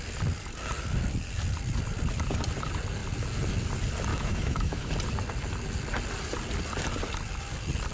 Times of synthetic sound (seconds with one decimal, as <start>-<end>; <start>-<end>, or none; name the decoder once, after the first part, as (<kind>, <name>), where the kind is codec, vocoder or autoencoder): 4.1-4.9 (autoencoder, DAC-VAE)